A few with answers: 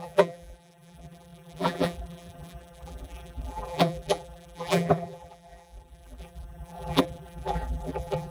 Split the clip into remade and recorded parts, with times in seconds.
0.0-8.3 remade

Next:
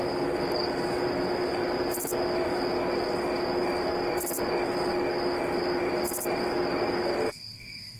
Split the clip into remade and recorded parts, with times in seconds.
0.0-7.3 recorded; 7.3-8.0 remade

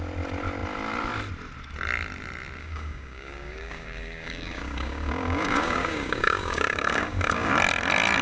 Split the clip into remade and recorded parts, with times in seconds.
0.0-2.6 recorded; 2.6-7.5 remade; 7.5-8.2 recorded

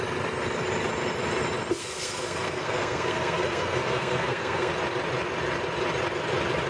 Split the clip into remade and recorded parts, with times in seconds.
0.0-1.8 recorded; 1.8-4.7 remade; 4.7-6.7 recorded

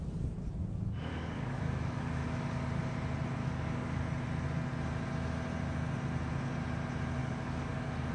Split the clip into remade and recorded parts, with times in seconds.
0.0-1.1 recorded; 1.1-2.8 remade; 2.8-3.4 recorded; 3.4-4.0 remade; 4.0-7.2 recorded; 7.2-8.1 remade

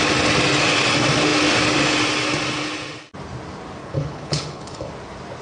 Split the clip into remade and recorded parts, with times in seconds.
0.0-3.8 recorded; 3.8-4.9 remade; 4.9-5.4 recorded

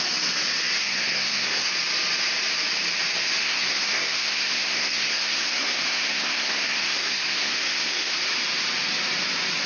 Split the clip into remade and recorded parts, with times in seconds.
0.0-0.8 recorded; 0.8-1.7 remade; 1.7-3.4 recorded; 3.4-8.2 remade; 8.2-9.7 recorded

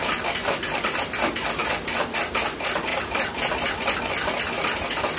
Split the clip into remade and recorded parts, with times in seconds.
0.0-2.9 recorded; 2.9-3.5 remade; 3.5-5.2 recorded